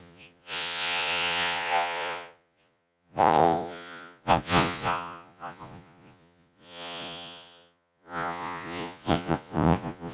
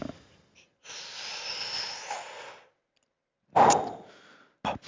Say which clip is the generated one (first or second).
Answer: first